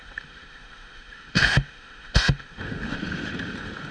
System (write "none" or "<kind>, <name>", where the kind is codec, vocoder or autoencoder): autoencoder, DAC-VAE